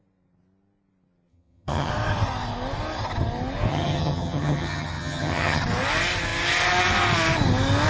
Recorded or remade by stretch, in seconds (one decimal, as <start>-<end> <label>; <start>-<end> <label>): 0.0-1.3 recorded; 1.3-1.9 remade; 1.9-3.7 recorded; 3.7-5.6 remade; 5.6-7.9 recorded